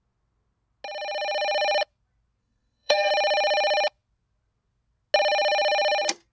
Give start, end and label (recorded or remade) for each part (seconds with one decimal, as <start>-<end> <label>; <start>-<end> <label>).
0.0-2.4 recorded; 2.4-3.1 remade; 3.1-6.3 recorded